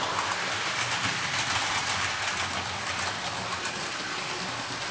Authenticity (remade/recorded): recorded